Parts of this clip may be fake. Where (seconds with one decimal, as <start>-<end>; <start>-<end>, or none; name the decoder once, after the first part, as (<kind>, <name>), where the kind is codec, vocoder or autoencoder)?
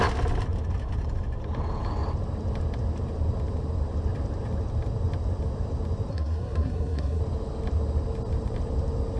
6.1-7.2 (codec, SNAC)